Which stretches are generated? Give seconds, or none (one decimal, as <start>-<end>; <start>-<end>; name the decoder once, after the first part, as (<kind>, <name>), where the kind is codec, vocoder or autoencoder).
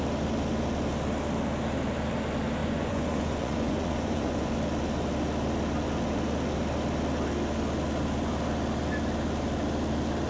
2.6-4.5 (vocoder, Vocos)